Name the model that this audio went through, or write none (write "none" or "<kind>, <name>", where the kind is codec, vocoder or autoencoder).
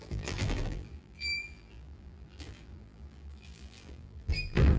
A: vocoder, BigVGAN v2